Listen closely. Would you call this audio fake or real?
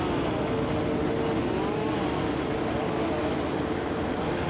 real